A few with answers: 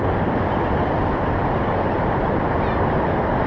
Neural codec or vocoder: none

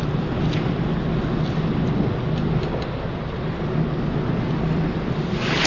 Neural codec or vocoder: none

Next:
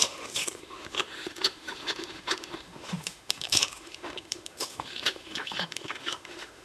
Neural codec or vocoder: autoencoder, DAC-VAE